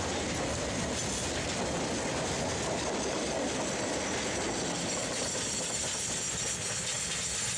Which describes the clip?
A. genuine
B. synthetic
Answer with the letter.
A